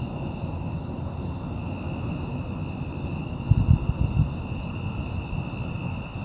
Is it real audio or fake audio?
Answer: real